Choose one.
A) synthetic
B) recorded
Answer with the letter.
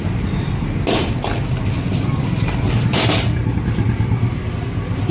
B